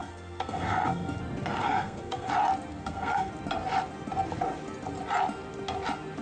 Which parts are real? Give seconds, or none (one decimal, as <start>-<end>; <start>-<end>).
1.2-1.6; 2.3-2.7; 3.3-6.2